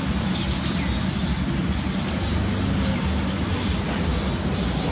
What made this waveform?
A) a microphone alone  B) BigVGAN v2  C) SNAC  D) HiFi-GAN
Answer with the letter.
A